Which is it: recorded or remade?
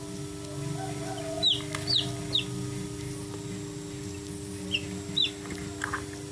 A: recorded